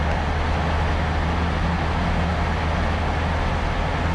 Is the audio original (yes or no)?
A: yes